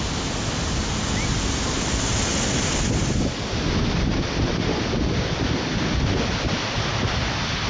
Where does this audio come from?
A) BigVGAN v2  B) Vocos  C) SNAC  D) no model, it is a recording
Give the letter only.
D